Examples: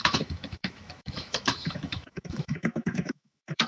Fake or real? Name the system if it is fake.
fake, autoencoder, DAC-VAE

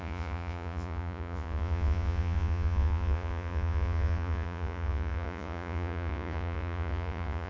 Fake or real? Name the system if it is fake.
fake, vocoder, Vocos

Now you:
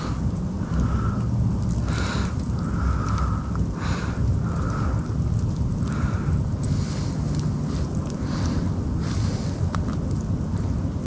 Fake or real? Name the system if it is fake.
real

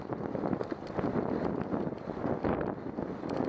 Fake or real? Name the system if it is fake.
real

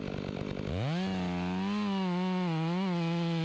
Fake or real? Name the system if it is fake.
real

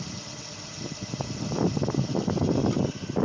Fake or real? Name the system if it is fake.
real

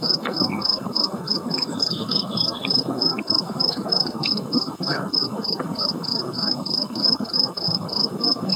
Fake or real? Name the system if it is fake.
fake, codec, SNAC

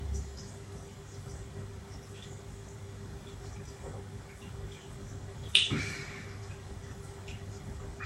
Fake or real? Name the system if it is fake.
fake, codec, DAC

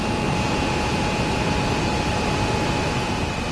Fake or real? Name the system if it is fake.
real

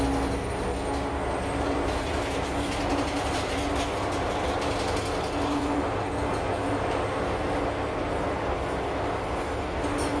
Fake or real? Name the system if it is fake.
real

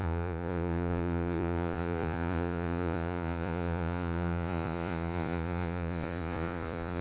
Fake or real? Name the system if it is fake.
fake, vocoder, Vocos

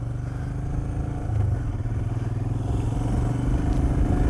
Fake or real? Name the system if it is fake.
real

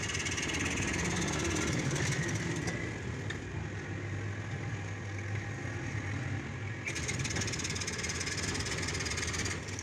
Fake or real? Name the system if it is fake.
real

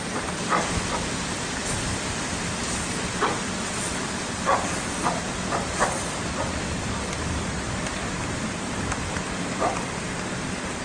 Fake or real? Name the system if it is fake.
real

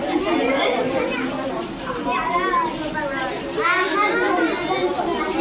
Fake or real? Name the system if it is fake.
real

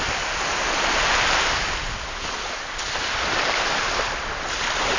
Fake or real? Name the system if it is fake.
fake, vocoder, BigVGAN v2